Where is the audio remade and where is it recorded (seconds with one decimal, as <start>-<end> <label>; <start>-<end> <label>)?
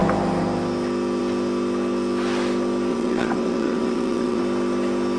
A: 0.0-2.9 recorded; 2.9-4.4 remade; 4.4-5.2 recorded